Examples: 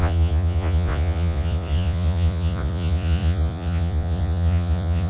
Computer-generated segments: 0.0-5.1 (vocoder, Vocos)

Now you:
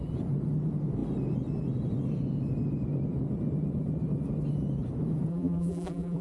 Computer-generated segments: 5.3-6.2 (vocoder, BigVGAN v2)

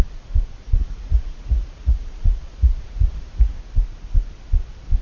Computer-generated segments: 0.8-3.6 (vocoder, Vocos)